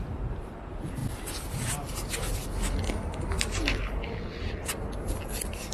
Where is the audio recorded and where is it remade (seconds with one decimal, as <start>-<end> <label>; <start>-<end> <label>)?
0.0-5.7 recorded